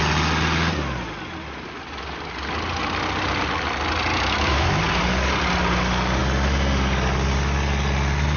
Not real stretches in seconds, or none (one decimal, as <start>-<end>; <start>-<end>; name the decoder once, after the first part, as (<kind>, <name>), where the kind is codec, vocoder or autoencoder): 4.1-4.8 (autoencoder, DAC-VAE)